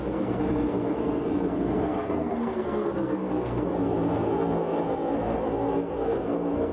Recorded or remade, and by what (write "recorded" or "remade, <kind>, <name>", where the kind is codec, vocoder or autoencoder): remade, codec, SNAC